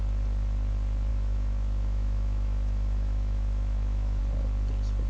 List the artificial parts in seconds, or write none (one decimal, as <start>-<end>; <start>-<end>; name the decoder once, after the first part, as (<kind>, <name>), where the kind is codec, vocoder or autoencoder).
1.1-4.2 (autoencoder, DAC-VAE)